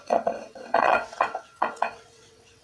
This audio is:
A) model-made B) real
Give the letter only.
A